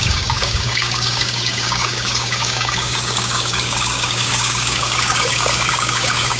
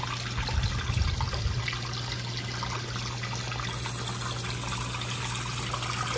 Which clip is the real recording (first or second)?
second